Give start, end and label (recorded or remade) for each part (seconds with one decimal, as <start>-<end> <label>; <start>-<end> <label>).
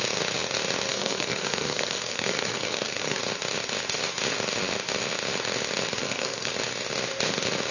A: 0.0-0.9 recorded; 0.9-3.2 remade; 3.2-6.0 recorded; 6.0-6.5 remade; 6.5-7.7 recorded